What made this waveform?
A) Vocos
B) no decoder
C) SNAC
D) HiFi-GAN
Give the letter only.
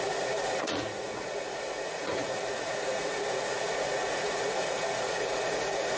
A